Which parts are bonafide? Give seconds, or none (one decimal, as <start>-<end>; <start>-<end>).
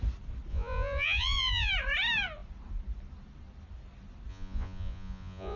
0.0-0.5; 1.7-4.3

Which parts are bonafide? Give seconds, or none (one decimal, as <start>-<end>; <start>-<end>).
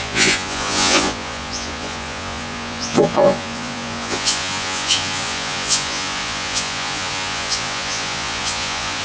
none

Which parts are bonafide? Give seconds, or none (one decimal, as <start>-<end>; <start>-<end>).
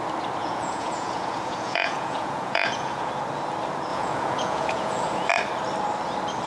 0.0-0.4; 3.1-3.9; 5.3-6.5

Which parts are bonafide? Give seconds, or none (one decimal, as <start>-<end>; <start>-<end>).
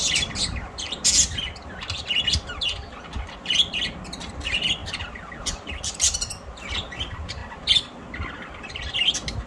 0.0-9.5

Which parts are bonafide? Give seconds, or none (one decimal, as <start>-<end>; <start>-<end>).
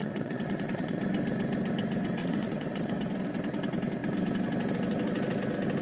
1.0-2.2; 2.9-5.8